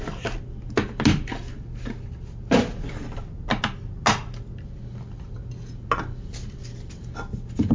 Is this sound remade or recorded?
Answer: recorded